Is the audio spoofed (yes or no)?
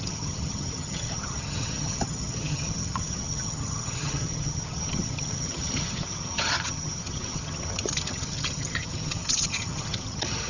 yes